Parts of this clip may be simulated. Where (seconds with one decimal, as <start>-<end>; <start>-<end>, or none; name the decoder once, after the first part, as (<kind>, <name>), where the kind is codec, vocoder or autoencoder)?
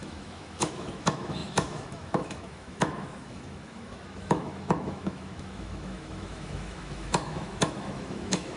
0.0-8.6 (autoencoder, DAC-VAE)